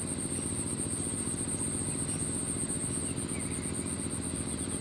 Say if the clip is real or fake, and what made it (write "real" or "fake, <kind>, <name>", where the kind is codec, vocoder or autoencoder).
real